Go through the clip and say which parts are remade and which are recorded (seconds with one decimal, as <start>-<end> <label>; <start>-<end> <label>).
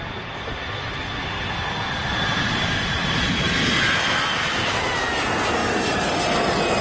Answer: 0.0-2.0 recorded; 2.0-5.1 remade; 5.1-6.8 recorded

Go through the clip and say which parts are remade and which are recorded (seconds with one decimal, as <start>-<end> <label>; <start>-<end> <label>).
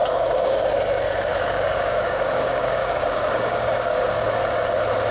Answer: 0.0-0.7 remade; 0.7-1.3 recorded; 1.3-4.4 remade; 4.4-5.1 recorded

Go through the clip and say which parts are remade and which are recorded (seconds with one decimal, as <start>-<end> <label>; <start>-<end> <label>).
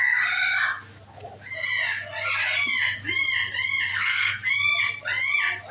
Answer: 0.0-3.9 recorded; 3.9-4.5 remade; 4.5-5.7 recorded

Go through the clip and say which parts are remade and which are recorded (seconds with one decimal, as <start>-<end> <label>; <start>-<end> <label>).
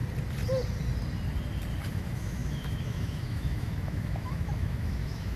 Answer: 0.0-1.9 recorded; 1.9-5.4 remade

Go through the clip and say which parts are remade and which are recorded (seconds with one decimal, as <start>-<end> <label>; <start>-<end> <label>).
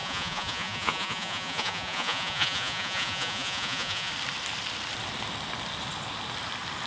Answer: 0.0-4.1 remade; 4.1-6.9 recorded